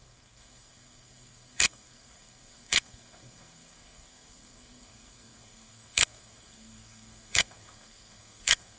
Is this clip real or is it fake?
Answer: fake